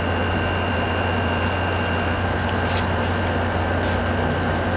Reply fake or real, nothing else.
real